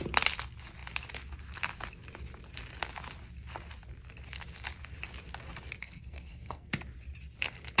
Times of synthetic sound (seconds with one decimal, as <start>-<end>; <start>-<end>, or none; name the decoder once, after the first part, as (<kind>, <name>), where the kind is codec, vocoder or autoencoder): 5.8-6.7 (codec, SNAC)